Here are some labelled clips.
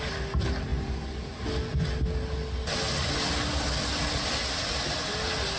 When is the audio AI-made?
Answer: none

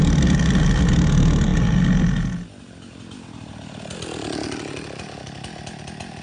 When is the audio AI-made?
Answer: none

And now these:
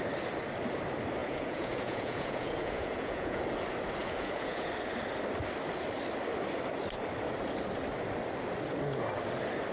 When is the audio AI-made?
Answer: 1.2-3.4 (vocoder, Vocos); 4.0-4.7

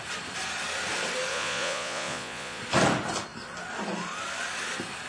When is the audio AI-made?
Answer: 1.3-2.6 (vocoder, Vocos)

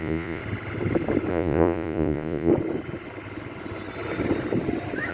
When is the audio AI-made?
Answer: 0.0-0.4 (vocoder, Vocos); 1.3-2.5